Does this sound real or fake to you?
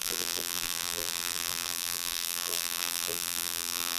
fake